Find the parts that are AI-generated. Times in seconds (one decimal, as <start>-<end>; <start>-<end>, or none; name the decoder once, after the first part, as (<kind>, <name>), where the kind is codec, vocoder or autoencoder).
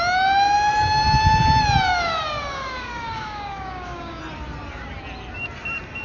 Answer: 1.9-4.2 (codec, DAC)